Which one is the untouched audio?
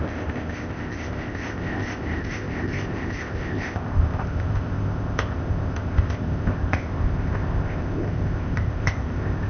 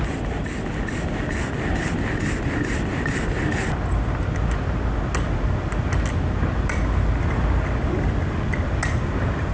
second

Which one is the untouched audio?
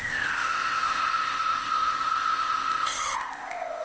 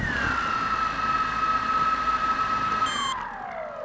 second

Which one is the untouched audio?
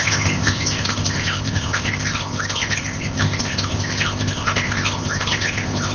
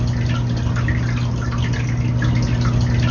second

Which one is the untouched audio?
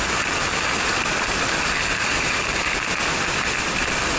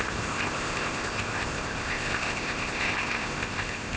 first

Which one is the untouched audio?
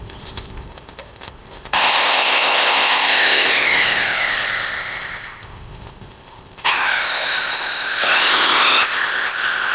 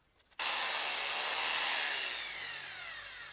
second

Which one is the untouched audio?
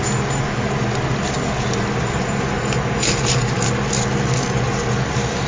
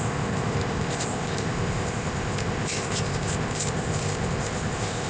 first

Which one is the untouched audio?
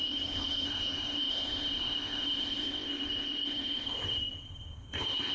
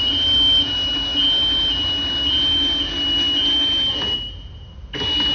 second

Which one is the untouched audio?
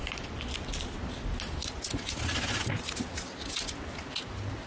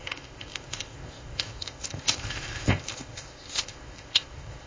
first